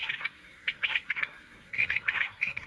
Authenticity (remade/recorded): remade